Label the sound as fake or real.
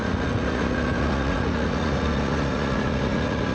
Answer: fake